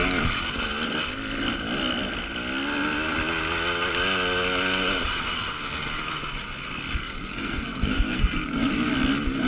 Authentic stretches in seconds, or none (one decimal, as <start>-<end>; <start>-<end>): 0.0-7.0; 8.7-9.5